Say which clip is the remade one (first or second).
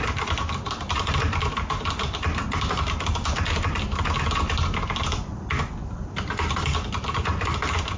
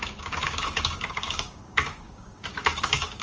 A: second